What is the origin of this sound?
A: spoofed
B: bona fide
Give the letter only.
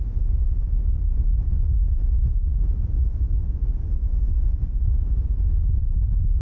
B